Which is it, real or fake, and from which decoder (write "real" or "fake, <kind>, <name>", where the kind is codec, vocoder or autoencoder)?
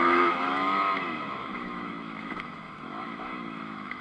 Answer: fake, autoencoder, DAC-VAE